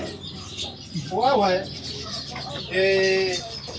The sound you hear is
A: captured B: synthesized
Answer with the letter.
A